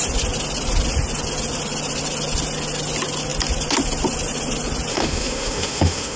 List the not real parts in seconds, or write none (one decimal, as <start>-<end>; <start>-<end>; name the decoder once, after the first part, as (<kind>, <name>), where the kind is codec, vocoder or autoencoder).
4.9-6.2 (autoencoder, DAC-VAE)